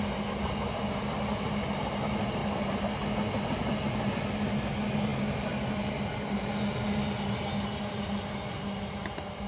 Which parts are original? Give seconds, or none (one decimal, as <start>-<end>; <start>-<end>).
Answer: 0.0-9.5